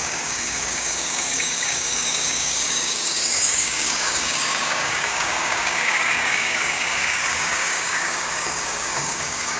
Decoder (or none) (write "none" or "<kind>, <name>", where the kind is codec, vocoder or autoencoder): codec, DAC